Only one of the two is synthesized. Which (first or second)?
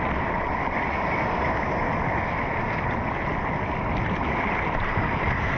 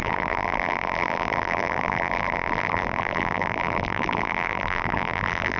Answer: second